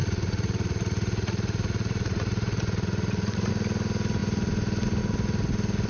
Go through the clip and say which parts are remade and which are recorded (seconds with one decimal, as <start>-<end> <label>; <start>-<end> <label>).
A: 0.0-3.5 remade; 3.5-5.9 recorded